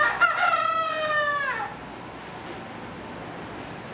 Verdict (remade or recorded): recorded